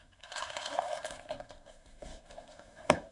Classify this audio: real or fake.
fake